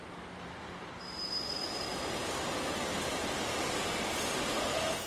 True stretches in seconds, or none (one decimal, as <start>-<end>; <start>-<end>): 0.0-5.1